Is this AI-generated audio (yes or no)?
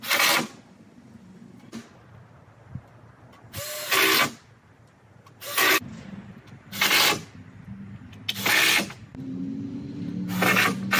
no